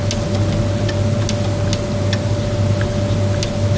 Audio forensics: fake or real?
real